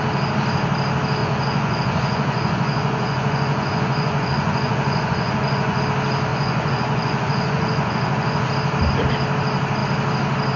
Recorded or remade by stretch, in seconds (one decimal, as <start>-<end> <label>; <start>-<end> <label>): 0.0-1.2 recorded; 1.2-5.8 remade; 5.8-6.3 recorded; 6.3-8.5 remade; 8.5-10.6 recorded